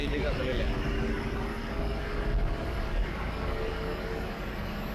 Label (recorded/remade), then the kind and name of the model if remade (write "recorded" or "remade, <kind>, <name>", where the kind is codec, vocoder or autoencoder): remade, codec, DAC